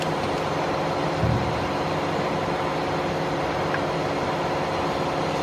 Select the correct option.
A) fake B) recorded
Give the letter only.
B